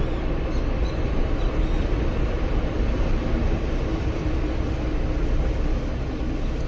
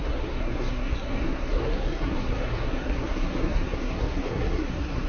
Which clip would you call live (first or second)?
first